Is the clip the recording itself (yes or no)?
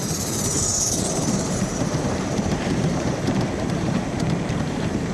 no